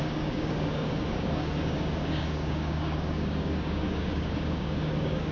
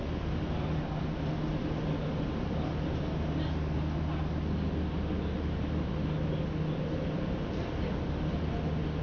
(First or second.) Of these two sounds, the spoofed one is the first